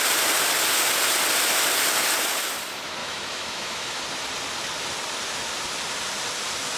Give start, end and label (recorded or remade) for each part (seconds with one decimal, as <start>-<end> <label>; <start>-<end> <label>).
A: 0.0-3.0 recorded; 3.0-4.0 remade; 4.0-6.8 recorded